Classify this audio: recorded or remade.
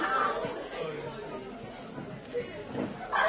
recorded